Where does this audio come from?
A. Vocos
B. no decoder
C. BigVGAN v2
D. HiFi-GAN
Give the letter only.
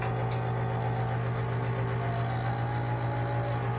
B